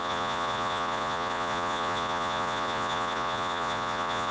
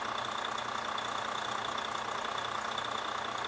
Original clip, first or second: second